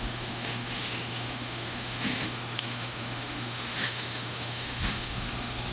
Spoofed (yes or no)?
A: yes